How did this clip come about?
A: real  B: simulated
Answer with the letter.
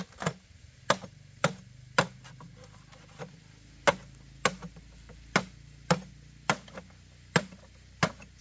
A